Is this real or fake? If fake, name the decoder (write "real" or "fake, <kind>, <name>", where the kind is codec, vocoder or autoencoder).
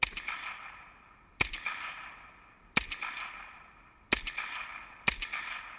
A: real